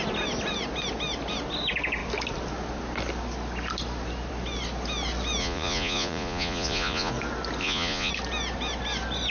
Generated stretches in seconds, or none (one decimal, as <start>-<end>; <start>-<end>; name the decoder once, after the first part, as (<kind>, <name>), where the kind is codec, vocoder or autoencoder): 5.4-7.1 (vocoder, Vocos); 7.6-8.1

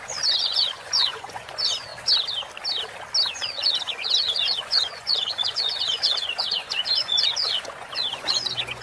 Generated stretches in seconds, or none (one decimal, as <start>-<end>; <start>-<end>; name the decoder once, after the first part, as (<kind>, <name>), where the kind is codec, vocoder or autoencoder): 0.0-1.9 (vocoder, Vocos); 3.3-8.8

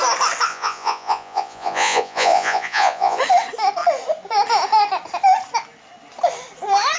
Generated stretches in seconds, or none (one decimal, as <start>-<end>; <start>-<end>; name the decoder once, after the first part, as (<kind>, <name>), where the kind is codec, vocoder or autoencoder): 0.5-3.2 (vocoder, Vocos)

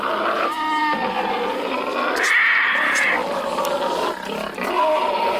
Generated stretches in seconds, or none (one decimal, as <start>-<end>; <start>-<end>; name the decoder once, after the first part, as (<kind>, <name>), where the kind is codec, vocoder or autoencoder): none